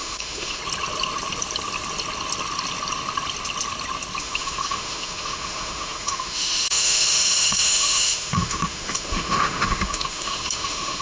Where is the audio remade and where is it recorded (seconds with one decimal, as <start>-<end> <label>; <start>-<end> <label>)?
0.0-0.6 remade; 0.6-4.2 recorded; 4.2-11.0 remade